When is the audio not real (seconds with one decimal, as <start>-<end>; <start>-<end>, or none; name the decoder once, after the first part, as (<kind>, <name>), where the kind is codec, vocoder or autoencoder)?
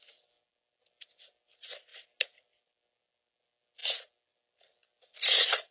none